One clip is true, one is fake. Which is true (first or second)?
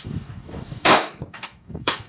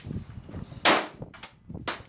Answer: second